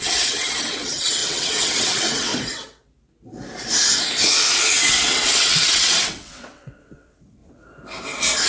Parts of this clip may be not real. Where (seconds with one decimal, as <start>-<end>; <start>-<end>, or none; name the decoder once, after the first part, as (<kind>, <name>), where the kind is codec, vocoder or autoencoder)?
0.0-2.3 (vocoder, WaveNeXt); 4.9-7.4